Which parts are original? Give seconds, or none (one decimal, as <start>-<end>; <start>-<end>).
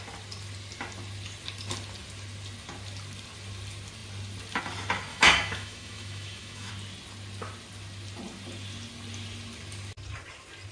0.0-5.1; 6.7-10.7